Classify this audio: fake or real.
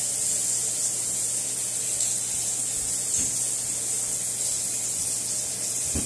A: real